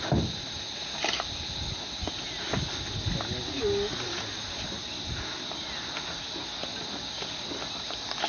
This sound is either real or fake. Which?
real